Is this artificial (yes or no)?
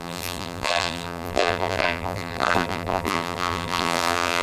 yes